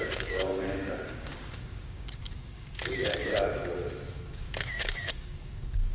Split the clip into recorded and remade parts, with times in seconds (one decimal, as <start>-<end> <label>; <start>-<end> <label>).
0.0-3.3 remade; 3.3-4.1 recorded; 4.1-5.9 remade